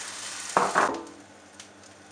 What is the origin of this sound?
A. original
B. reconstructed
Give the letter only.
A